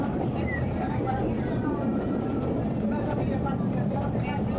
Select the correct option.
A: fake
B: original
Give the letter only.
A